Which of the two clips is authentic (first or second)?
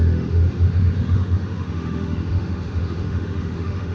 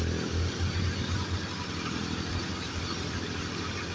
second